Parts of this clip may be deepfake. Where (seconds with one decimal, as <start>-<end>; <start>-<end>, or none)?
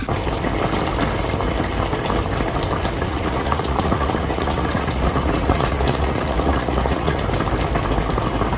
3.0-7.2